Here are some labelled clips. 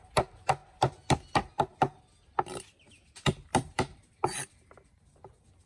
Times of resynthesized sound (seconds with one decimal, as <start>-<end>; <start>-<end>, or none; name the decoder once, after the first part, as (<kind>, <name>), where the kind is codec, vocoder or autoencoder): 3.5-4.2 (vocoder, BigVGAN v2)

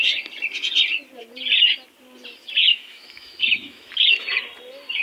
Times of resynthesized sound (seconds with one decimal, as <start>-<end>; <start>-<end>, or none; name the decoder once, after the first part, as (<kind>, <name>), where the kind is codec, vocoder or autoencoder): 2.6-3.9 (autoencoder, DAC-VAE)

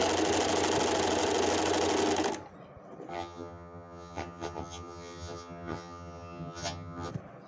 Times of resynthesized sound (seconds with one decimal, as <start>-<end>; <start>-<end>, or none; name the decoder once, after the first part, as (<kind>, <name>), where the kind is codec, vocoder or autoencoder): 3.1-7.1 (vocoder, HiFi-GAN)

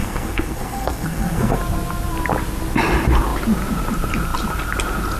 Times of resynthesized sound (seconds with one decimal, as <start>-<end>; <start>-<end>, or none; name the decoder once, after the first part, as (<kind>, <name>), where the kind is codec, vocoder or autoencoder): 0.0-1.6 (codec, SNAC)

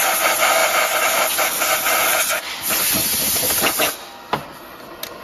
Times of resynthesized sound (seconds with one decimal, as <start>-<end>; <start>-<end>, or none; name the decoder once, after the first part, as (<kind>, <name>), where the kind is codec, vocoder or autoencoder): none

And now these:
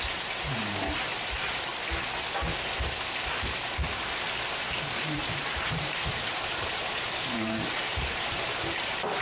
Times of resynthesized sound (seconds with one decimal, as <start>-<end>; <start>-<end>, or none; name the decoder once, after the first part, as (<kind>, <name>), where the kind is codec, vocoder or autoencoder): 0.0-1.7 (vocoder, BigVGAN v2); 4.5-9.2

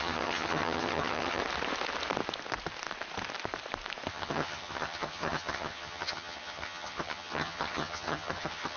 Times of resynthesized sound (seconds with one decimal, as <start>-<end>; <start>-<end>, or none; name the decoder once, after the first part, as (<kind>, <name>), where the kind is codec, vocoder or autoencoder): 0.0-1.4 (vocoder, HiFi-GAN); 4.1-8.8